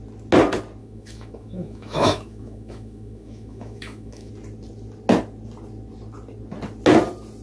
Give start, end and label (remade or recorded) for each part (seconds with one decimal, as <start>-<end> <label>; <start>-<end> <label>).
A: 0.0-0.8 recorded; 0.8-4.3 remade; 4.3-7.4 recorded